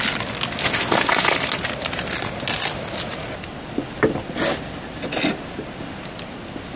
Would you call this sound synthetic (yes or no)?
no